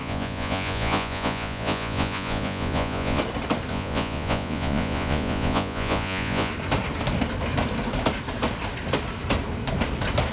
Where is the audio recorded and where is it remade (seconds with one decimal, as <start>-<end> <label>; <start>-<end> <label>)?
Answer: 0.0-3.2 remade; 3.2-3.7 recorded; 3.7-6.5 remade; 6.5-10.3 recorded

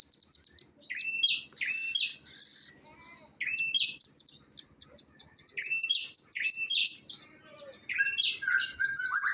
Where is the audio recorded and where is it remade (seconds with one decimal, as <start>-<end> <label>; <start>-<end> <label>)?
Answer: 0.0-9.3 recorded